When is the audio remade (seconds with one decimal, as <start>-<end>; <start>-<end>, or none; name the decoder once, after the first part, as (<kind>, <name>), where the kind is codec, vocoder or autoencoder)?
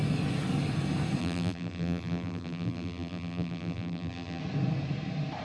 1.2-4.4 (vocoder, BigVGAN v2)